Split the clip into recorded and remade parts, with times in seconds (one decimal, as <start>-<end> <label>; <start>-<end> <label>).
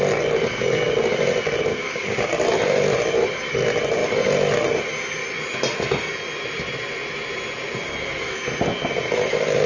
0.0-1.7 recorded; 1.7-2.3 remade; 2.3-9.7 recorded